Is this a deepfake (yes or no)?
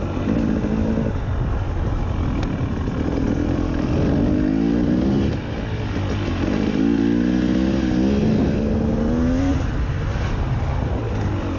no